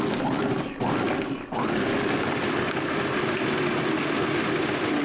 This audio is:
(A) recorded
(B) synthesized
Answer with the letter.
A